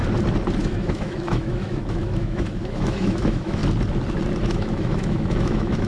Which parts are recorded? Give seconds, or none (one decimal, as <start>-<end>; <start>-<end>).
0.0-0.6; 3.6-4.4